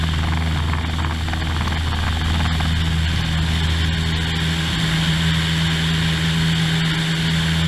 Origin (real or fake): real